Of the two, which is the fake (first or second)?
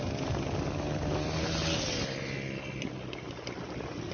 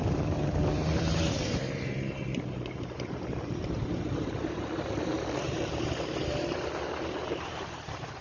second